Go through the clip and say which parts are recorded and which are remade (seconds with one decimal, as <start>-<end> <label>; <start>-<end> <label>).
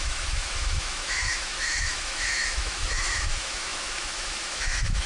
0.0-5.1 remade